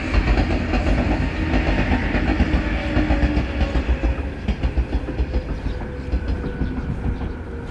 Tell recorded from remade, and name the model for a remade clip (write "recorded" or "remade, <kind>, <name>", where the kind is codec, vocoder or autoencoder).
recorded